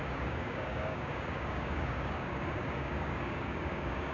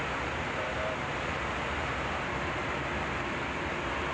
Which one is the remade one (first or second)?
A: first